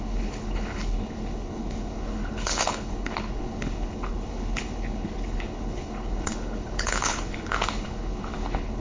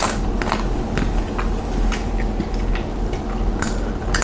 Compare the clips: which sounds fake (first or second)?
first